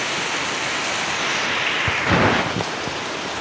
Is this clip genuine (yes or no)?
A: yes